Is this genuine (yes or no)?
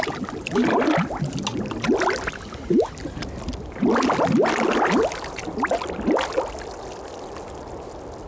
yes